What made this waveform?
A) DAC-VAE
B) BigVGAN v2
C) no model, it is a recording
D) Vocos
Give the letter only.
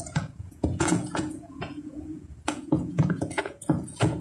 D